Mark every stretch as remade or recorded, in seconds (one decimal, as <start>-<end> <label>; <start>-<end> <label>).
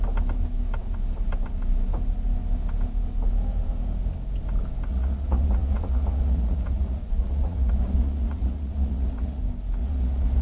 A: 0.0-4.9 recorded; 4.9-9.4 remade; 9.4-9.8 recorded; 9.8-10.4 remade